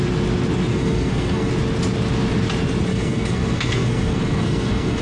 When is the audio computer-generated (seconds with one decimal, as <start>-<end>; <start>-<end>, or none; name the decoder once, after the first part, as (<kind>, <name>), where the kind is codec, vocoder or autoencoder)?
0.7-1.5 (codec, SNAC); 2.9-5.0